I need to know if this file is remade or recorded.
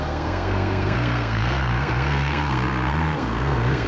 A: remade